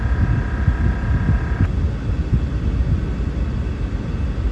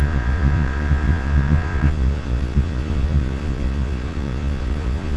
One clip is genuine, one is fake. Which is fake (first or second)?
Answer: second